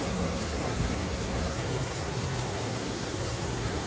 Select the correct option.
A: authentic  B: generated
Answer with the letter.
B